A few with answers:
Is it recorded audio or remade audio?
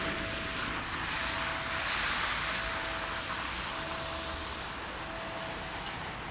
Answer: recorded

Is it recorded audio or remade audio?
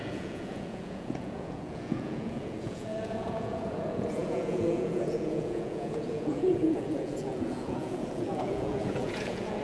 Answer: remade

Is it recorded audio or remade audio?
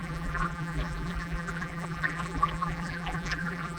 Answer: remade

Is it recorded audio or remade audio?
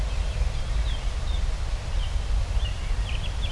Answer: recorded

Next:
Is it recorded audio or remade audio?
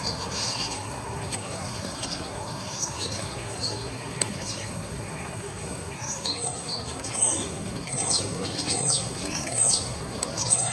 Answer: remade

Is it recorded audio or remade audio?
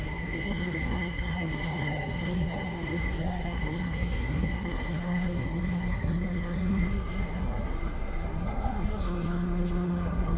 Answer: remade